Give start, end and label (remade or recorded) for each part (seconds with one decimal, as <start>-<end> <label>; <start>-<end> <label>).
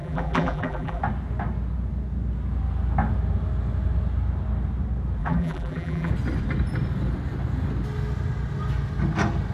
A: 0.0-1.0 remade; 1.0-5.2 recorded; 5.2-6.1 remade; 6.1-9.5 recorded